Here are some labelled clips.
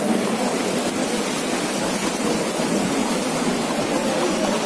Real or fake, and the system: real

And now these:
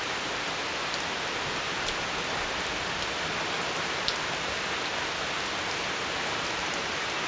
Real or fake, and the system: real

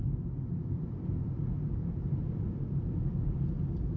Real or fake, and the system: fake, vocoder, BigVGAN v2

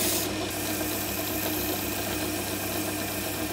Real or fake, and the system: real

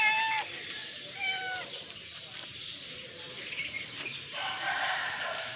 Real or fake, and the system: fake, vocoder, BigVGAN v2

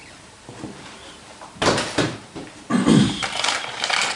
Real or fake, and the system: fake, vocoder, BigVGAN v2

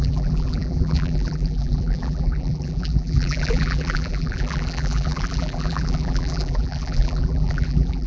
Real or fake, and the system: fake, vocoder, BigVGAN v2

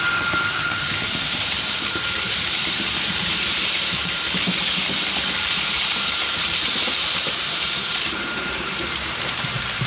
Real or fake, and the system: fake, vocoder, BigVGAN v2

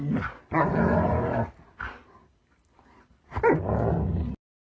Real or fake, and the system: real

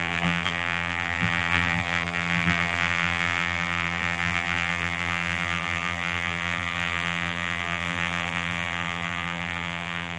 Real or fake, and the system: fake, vocoder, BigVGAN v2